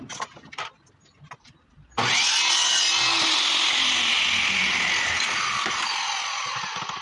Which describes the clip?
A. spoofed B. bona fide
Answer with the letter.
B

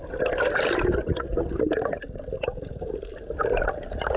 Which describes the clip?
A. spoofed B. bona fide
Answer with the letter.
B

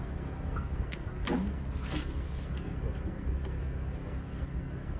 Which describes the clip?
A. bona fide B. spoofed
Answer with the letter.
B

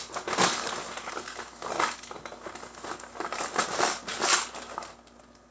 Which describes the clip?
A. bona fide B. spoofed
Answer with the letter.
A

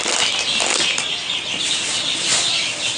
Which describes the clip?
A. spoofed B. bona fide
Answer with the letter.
B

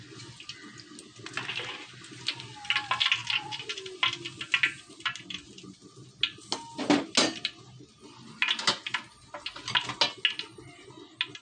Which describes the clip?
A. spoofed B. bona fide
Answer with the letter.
B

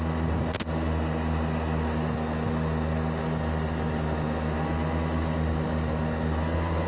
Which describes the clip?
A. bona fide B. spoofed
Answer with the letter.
A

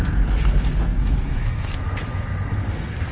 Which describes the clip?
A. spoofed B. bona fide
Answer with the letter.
A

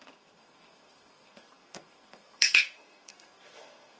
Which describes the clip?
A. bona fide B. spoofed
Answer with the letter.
B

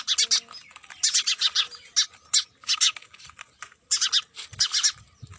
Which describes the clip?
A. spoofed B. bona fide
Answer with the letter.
B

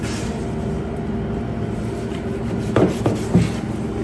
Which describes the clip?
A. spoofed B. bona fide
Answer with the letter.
B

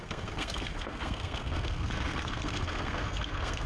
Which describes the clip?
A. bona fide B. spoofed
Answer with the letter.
B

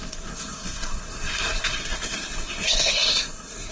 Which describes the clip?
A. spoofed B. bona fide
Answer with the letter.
A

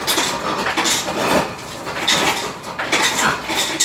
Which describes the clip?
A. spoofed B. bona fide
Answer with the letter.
B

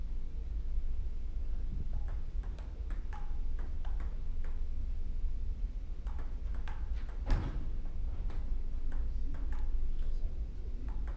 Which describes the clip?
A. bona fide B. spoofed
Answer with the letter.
A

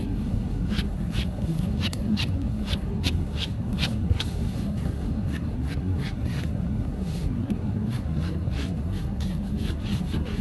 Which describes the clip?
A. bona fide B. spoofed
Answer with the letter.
B